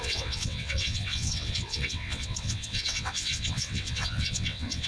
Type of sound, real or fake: fake